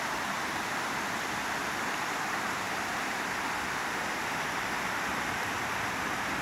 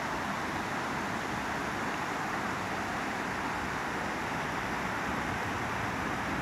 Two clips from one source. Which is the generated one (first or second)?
first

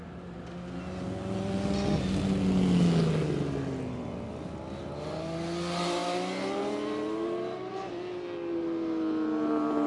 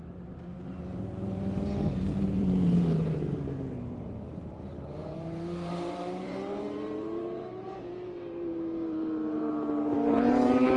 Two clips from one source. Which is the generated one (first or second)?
second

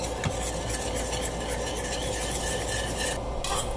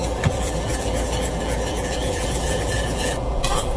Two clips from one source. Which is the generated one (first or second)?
second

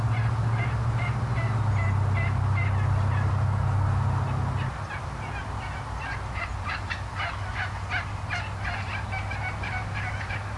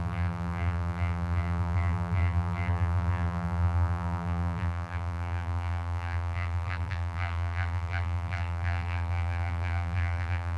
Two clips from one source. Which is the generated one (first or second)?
second